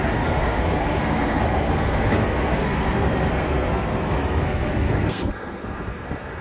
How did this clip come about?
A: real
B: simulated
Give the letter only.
B